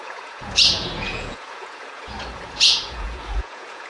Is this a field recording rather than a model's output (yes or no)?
no